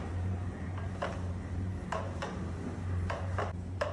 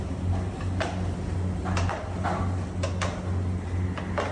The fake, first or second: first